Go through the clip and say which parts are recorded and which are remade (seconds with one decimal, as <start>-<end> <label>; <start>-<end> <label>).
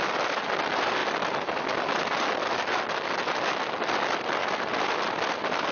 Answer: 0.0-5.7 recorded